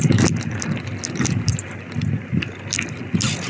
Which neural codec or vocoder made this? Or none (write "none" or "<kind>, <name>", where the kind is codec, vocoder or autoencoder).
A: none